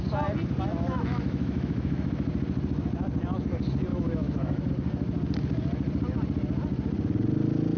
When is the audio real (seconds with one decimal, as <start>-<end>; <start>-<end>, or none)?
0.0-0.7; 2.1-3.9; 4.7-7.8